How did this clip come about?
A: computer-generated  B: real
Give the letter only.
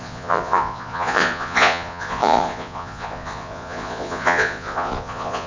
A